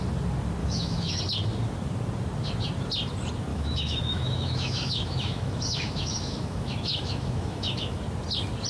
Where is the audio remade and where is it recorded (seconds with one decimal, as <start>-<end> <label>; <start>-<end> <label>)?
0.0-0.6 recorded; 0.6-1.2 remade; 1.2-3.5 recorded; 3.5-8.0 remade; 8.0-8.7 recorded